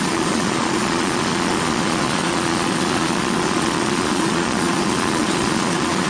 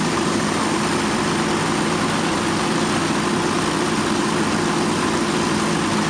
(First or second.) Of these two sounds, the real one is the second